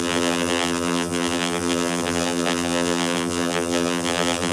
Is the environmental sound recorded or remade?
remade